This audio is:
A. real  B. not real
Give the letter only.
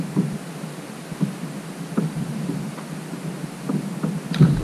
A